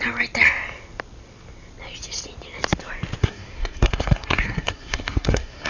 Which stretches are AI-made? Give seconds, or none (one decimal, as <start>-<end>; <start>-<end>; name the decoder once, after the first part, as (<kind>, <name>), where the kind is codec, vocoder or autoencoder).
3.2-5.7 (codec, SNAC)